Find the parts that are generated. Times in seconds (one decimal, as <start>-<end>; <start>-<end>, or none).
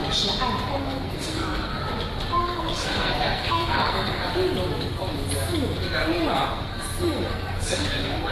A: 0.8-1.8; 2.4-4.3; 6.3-8.3